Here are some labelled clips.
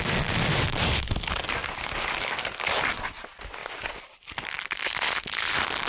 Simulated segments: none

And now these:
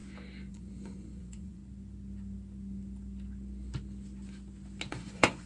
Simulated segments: 0.5-1.6 (vocoder, Vocos); 4.9-5.5

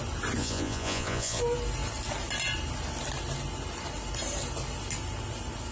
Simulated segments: 0.4-1.4 (vocoder, Vocos)

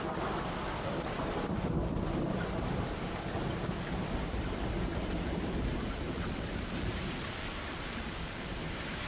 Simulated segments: 4.9-8.6 (vocoder, BigVGAN v2)

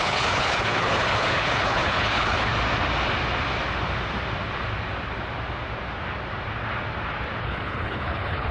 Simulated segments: 0.0-2.5 (codec, HILCodec); 7.4-8.5

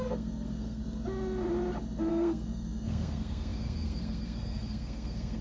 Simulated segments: 0.0-0.8 (codec, SNAC); 2.1-5.4

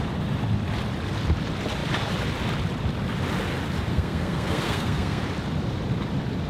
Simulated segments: 3.9-5.2 (codec, SNAC)

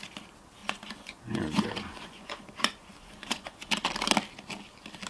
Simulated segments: 0.6-3.7 (vocoder, Vocos)